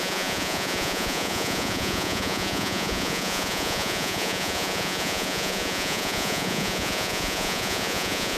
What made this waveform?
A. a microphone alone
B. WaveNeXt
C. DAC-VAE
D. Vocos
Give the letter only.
D